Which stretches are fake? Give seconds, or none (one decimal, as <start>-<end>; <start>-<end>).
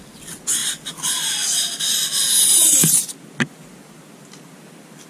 none